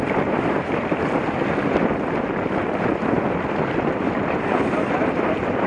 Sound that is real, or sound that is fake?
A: real